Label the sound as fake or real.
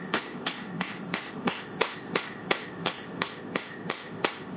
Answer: fake